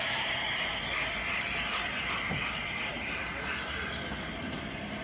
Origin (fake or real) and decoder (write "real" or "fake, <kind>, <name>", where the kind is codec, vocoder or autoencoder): real